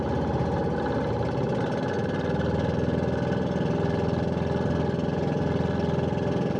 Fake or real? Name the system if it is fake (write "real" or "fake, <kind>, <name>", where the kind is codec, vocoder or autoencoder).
real